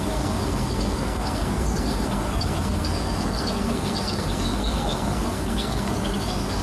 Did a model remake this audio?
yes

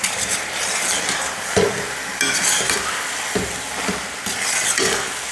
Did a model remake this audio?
no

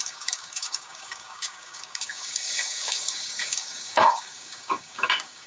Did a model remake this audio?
yes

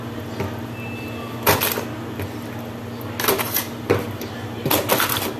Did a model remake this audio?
no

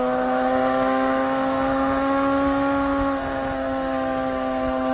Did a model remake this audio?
yes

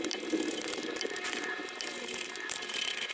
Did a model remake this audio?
yes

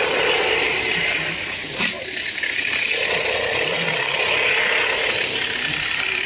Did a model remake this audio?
no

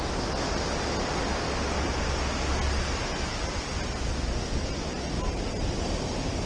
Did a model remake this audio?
no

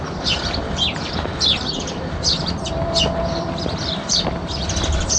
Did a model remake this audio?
yes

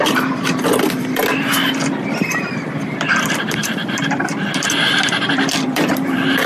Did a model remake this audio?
yes